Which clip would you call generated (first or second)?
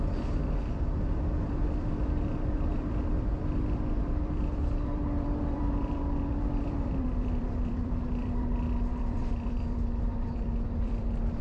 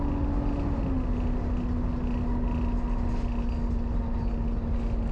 first